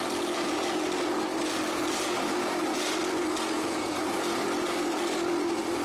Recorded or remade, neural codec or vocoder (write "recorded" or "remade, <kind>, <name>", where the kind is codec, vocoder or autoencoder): recorded